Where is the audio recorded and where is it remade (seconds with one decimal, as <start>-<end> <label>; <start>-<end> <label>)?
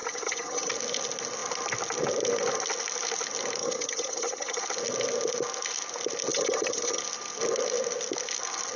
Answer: 0.0-0.7 remade; 0.7-3.6 recorded; 3.6-4.6 remade; 4.6-6.3 recorded; 6.3-7.0 remade; 7.0-8.8 recorded